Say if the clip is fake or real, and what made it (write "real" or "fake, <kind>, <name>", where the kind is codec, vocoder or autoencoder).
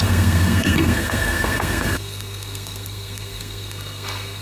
fake, codec, SNAC